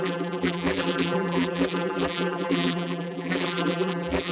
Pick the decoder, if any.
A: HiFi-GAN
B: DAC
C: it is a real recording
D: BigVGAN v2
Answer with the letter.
D